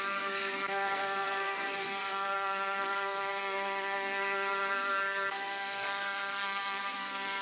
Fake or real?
fake